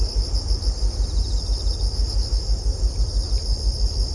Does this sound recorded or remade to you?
recorded